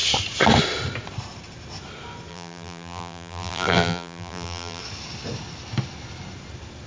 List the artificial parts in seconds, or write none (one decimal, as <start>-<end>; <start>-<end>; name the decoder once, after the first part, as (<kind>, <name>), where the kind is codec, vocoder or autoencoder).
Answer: 2.3-4.8 (vocoder, BigVGAN v2)